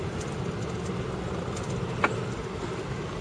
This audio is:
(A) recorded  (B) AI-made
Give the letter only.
A